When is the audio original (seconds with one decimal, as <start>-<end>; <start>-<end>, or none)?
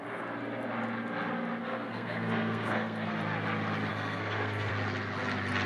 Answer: 0.0-1.6; 3.1-3.9; 4.7-5.7